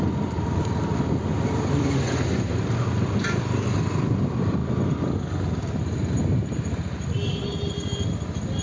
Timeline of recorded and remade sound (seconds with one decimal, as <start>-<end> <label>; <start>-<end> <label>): 0.0-8.6 recorded